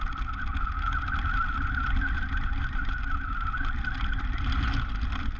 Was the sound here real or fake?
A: real